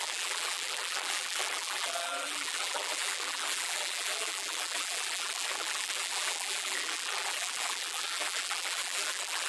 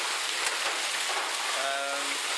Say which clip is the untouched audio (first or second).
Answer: second